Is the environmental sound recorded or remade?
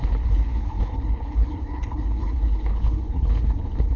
remade